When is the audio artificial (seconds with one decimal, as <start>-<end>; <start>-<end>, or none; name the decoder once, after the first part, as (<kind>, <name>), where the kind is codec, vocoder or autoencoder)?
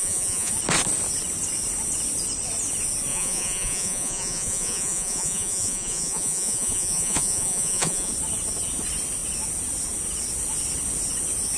0.0-0.5 (vocoder, Vocos); 3.1-8.1